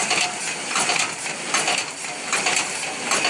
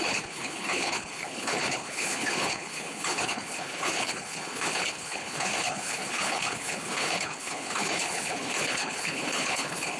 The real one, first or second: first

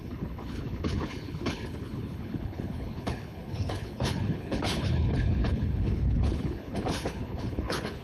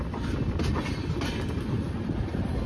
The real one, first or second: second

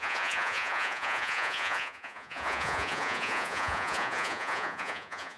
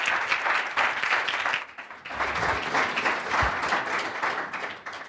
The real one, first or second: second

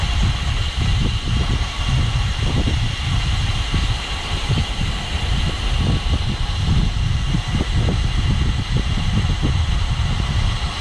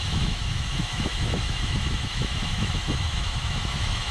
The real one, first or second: first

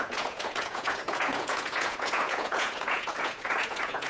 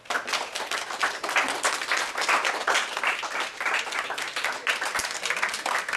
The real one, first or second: second